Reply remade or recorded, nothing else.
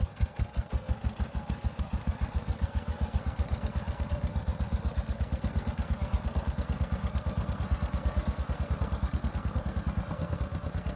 remade